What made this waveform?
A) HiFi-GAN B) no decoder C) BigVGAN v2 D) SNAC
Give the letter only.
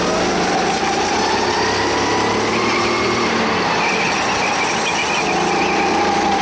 B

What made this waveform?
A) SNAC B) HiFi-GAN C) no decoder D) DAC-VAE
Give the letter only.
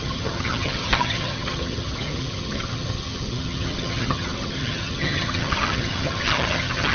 B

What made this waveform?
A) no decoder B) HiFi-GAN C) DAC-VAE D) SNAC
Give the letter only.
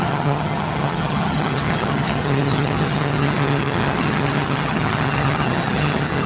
B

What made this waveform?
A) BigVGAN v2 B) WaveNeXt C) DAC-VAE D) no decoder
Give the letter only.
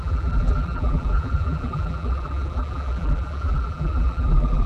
A